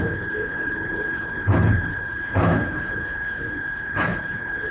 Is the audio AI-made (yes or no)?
yes